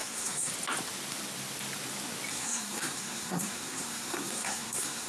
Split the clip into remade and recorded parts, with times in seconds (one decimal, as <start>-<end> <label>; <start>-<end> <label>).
0.0-0.5 remade; 0.5-2.3 recorded; 2.3-5.1 remade